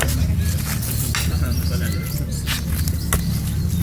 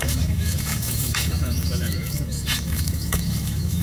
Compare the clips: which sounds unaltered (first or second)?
first